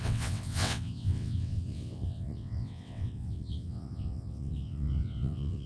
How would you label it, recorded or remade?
remade